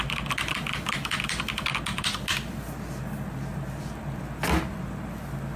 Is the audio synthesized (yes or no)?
no